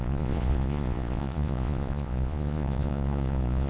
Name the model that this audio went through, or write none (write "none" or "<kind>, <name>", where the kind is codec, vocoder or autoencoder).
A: vocoder, Vocos